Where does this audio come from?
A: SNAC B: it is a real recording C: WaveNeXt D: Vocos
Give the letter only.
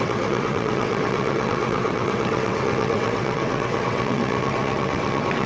C